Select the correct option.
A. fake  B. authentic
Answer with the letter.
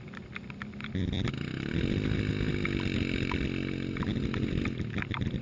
B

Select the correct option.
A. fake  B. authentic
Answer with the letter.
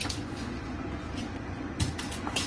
A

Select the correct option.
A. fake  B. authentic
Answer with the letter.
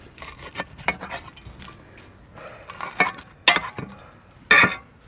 B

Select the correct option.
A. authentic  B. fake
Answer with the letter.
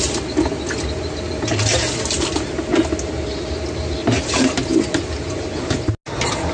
A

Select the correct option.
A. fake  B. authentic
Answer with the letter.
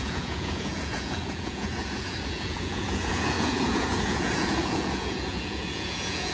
A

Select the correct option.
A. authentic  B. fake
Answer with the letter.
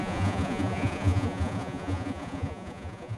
B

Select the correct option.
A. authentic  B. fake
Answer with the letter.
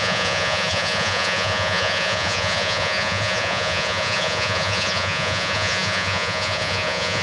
B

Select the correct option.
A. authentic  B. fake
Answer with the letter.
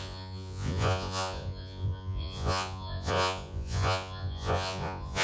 B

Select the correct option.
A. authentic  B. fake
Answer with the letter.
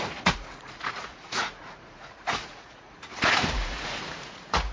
B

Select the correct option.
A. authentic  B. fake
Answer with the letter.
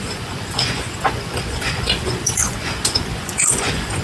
B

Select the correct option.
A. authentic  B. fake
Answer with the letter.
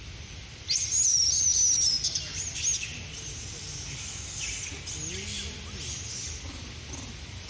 A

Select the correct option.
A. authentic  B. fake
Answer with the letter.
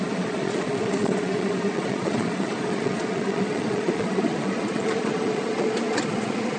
B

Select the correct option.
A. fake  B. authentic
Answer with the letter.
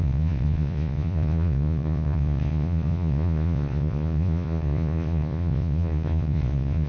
A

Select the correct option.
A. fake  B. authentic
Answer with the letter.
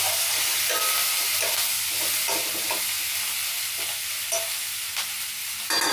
B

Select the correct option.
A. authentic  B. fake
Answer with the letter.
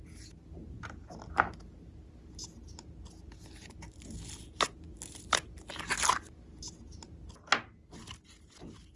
A